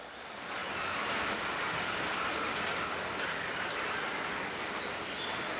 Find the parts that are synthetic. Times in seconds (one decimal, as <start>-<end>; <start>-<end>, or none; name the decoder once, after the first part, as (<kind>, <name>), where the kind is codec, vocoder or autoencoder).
none